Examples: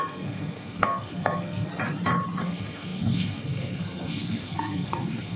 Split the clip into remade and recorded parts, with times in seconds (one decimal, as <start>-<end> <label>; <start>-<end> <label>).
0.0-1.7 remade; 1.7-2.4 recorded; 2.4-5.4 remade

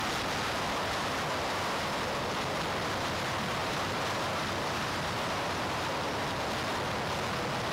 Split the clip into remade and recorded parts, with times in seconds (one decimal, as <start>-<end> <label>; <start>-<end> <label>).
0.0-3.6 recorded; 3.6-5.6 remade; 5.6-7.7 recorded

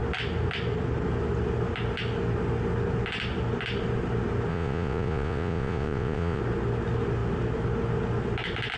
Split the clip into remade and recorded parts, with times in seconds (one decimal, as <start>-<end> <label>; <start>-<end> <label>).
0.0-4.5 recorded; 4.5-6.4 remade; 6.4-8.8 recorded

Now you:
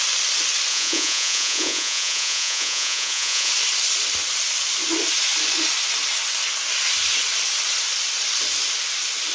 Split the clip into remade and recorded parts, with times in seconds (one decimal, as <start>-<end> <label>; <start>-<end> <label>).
0.0-0.7 recorded; 0.7-3.5 remade; 3.5-9.3 recorded

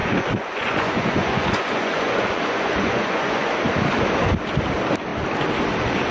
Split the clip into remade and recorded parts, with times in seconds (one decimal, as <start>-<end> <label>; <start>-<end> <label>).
0.0-3.5 remade; 3.5-6.1 recorded